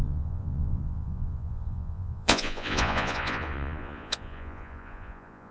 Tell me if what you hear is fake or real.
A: fake